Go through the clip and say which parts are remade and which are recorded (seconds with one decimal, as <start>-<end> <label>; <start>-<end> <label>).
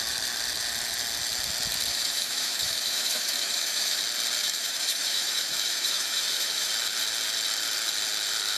0.0-1.9 recorded; 1.9-4.0 remade; 4.0-4.4 recorded; 4.4-6.7 remade; 6.7-8.6 recorded